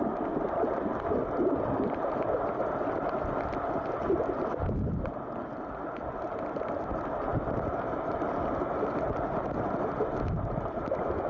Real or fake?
real